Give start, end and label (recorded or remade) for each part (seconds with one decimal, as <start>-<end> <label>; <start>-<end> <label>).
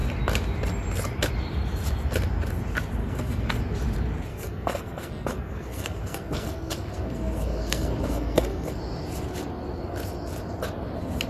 0.0-3.0 recorded; 3.0-3.6 remade; 3.6-4.3 recorded; 4.3-8.8 remade; 8.8-11.3 recorded